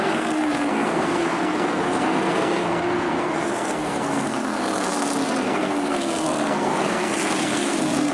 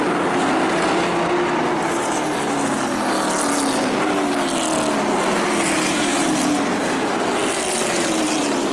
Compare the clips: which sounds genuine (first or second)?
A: second